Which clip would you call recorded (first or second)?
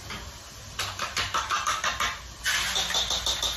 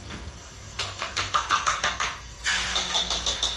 first